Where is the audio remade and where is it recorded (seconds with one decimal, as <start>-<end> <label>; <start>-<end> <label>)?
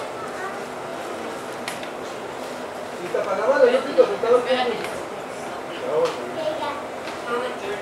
0.0-3.7 recorded; 3.7-5.6 remade; 5.6-7.8 recorded